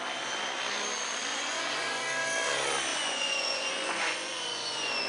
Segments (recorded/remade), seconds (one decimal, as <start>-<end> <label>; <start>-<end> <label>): 0.0-1.3 recorded; 1.3-2.0 remade; 2.0-2.9 recorded; 2.9-5.1 remade